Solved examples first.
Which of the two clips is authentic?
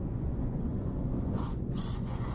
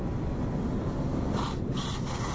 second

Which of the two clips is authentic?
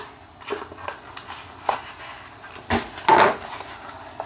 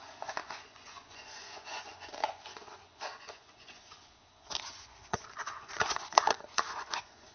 first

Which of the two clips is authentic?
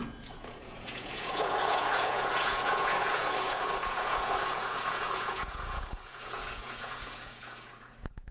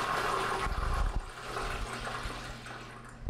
second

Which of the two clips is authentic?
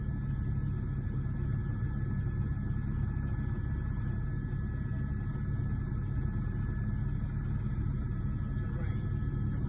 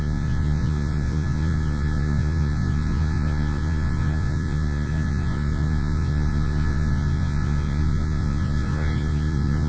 first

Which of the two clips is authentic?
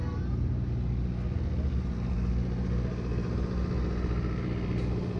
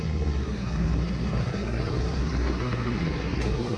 first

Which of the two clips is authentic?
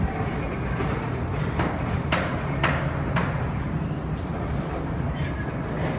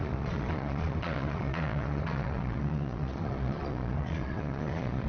first